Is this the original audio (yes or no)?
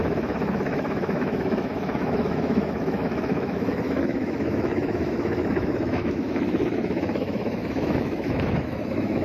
no